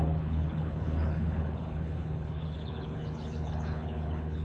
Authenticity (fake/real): fake